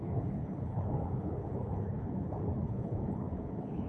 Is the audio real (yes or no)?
no